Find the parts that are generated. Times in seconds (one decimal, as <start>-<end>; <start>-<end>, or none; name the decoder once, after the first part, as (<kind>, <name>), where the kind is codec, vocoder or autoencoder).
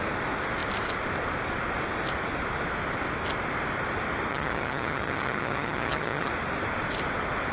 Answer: 4.3-6.3 (vocoder, HiFi-GAN)